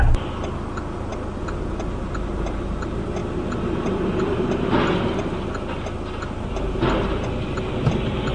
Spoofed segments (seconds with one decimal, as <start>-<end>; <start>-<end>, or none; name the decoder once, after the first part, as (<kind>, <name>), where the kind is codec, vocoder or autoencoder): none